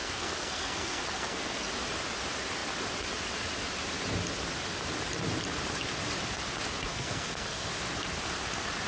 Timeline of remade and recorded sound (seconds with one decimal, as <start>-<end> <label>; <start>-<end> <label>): 0.0-1.7 remade; 1.7-6.9 recorded; 6.9-7.7 remade; 7.7-8.9 recorded